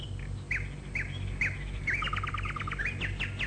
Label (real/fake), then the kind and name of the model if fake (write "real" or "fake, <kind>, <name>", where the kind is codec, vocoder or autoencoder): real